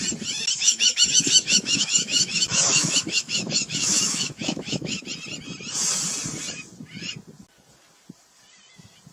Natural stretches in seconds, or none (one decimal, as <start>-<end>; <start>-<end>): 0.0-0.6; 5.0-9.1